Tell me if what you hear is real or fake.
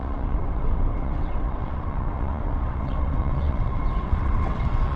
fake